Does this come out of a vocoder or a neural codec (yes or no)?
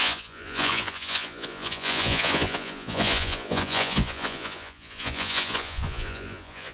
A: yes